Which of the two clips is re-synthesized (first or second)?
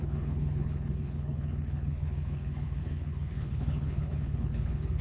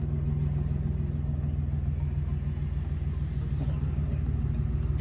first